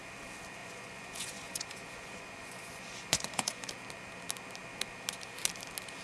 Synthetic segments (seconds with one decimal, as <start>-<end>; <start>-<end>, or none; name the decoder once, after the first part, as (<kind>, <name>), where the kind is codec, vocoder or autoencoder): 0.6-3.7 (vocoder, Vocos)